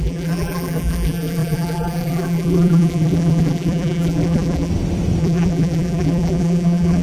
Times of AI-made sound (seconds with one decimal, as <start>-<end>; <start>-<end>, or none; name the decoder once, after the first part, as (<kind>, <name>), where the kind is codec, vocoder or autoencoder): 0.0-4.7 (vocoder, BigVGAN v2); 5.2-7.0